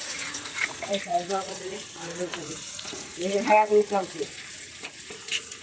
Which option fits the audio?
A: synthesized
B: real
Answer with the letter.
A